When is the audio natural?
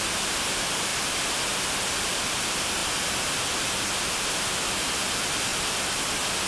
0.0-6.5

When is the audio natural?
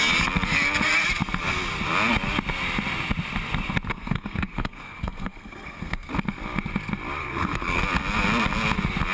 0.0-3.9; 6.1-7.2; 7.8-9.1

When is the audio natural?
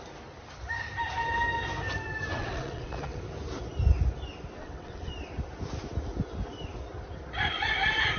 0.0-2.3; 3.2-4.6; 5.1-8.2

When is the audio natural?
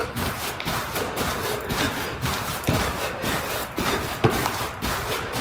3.2-3.6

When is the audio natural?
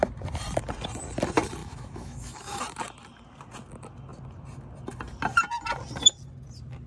0.0-1.6; 2.6-6.9